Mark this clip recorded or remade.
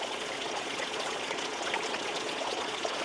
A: remade